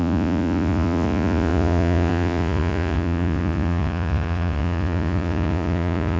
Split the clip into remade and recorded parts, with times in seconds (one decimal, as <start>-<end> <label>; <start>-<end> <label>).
0.0-6.2 remade